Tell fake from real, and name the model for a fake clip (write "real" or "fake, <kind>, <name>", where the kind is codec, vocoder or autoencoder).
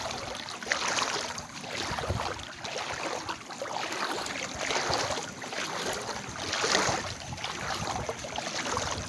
real